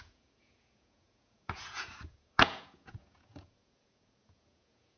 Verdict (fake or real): fake